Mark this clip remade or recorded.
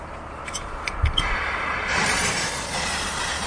remade